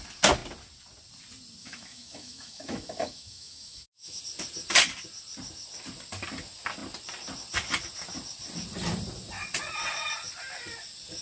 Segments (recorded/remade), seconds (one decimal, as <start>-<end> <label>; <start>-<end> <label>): 0.0-1.6 recorded; 1.6-4.2 remade; 4.2-11.2 recorded